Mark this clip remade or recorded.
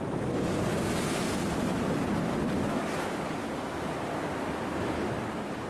recorded